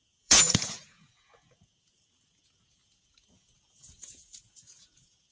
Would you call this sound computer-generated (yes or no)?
yes